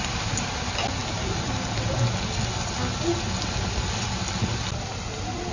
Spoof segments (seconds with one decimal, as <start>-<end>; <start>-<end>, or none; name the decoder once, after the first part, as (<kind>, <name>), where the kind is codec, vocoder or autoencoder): none